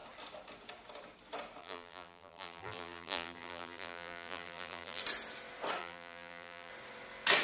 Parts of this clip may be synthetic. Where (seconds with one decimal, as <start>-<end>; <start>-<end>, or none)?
1.6-5.0; 5.8-6.7